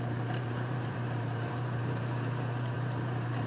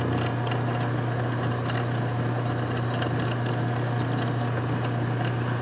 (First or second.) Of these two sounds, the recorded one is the second